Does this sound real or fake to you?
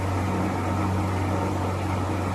real